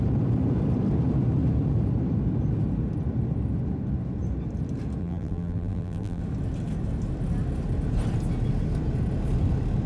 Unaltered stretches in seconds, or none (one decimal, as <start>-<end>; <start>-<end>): 0.0-5.0; 6.2-9.9